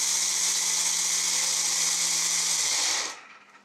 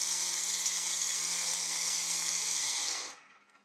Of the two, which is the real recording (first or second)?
first